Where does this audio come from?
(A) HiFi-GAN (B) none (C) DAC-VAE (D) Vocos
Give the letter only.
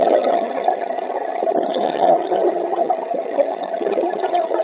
A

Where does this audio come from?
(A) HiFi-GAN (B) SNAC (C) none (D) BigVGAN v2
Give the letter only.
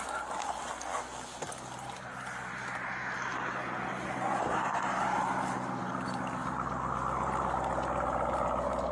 C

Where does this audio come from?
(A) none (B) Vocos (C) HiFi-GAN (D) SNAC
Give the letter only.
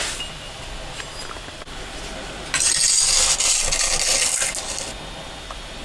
A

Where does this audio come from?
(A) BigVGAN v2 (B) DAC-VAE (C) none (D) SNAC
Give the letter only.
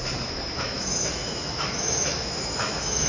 B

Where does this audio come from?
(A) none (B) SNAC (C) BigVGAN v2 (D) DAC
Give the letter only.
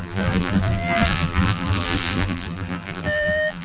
C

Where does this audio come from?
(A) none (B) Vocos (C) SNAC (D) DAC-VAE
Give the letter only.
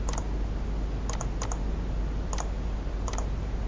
A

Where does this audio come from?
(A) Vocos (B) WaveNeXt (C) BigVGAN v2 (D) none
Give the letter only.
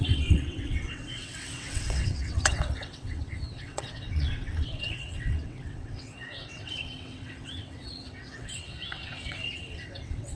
B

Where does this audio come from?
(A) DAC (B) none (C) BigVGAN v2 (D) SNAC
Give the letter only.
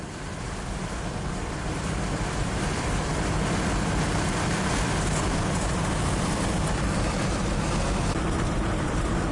C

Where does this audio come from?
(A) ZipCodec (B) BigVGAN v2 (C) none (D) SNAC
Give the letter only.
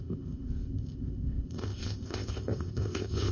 A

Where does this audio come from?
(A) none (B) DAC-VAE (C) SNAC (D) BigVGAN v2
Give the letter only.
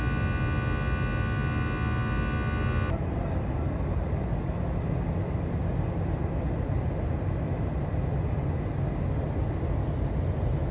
A